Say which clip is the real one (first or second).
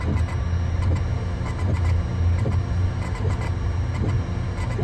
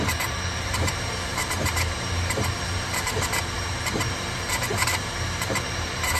first